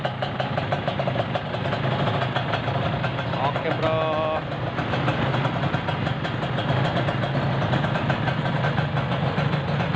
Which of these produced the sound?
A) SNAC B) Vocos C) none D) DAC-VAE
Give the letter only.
C